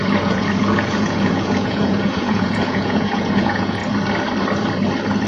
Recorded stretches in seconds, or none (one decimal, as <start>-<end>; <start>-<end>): 3.8-5.3